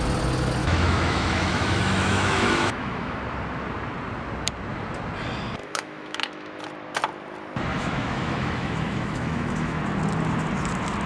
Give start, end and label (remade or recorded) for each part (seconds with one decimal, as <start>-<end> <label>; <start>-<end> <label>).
0.0-0.6 recorded; 0.6-3.2 remade; 3.2-5.6 recorded; 5.6-6.6 remade; 6.6-7.7 recorded; 7.7-9.8 remade; 9.8-11.1 recorded